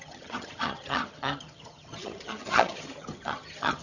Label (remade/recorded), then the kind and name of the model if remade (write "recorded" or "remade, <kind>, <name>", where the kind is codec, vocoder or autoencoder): remade, vocoder, HiFi-GAN